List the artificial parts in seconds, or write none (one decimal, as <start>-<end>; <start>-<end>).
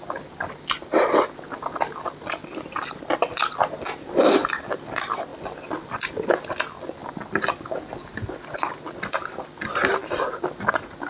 none